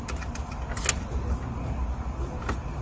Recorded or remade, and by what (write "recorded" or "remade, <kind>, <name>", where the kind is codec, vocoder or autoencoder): recorded